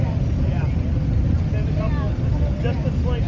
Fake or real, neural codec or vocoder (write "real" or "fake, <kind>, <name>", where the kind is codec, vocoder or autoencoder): real